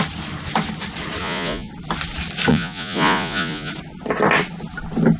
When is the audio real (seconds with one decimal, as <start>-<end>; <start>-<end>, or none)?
0.0-1.2; 1.7-2.5; 3.7-5.2